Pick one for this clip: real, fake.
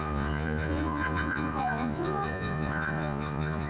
fake